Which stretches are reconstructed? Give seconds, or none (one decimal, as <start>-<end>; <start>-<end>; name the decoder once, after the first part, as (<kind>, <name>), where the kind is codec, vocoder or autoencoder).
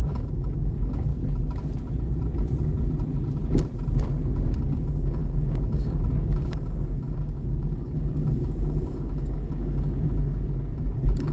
0.0-1.1 (codec, DAC); 4.6-11.3